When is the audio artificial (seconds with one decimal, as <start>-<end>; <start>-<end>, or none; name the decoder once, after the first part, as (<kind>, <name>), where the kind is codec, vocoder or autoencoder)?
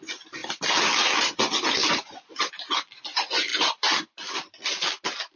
1.8-2.5 (vocoder, BigVGAN v2)